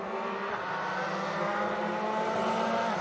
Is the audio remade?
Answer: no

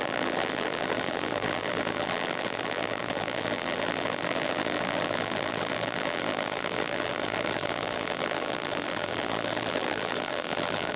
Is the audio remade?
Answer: yes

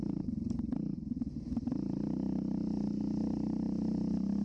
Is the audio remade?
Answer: no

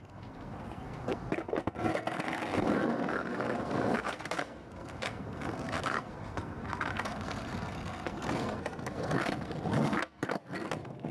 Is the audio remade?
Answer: yes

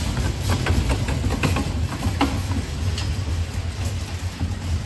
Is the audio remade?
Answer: no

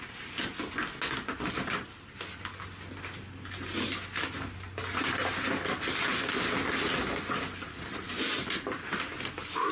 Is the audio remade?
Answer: no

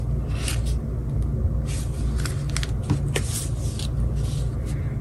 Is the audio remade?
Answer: no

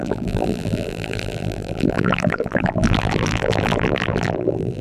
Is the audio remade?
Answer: yes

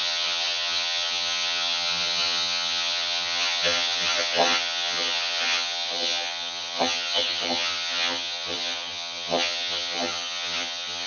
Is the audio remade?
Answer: yes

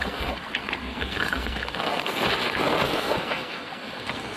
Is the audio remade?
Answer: yes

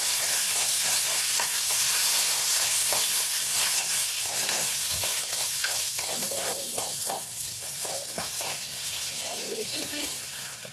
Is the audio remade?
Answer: yes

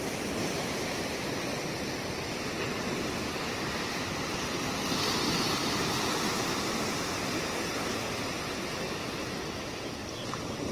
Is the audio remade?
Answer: no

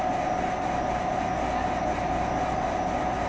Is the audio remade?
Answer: no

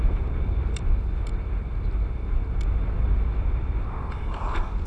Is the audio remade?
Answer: no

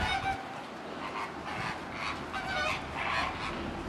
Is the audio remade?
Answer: no